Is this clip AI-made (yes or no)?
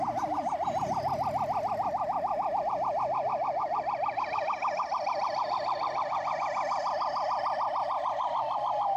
no